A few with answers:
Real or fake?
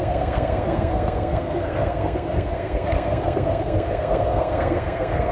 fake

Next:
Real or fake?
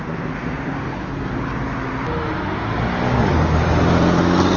real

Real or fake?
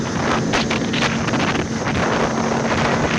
real